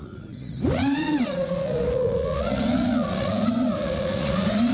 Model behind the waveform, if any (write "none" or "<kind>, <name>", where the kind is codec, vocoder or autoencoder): vocoder, Vocos